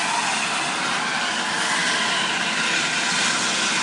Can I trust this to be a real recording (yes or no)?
yes